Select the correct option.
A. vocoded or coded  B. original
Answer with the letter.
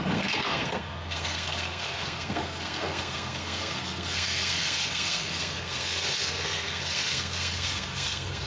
A